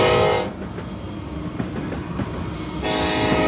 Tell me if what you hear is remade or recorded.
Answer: recorded